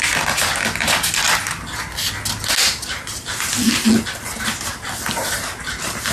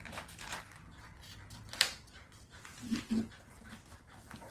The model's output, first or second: second